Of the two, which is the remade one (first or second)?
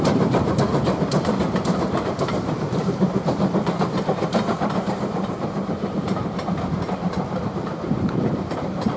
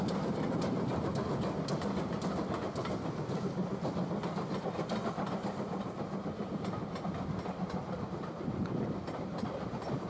first